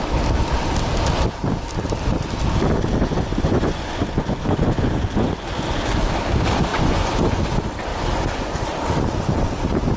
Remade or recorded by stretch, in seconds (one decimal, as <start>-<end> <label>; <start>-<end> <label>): 0.0-3.0 recorded; 3.0-6.0 remade; 6.0-6.7 recorded; 6.7-7.4 remade; 7.4-7.9 recorded; 7.9-8.5 remade; 8.5-10.0 recorded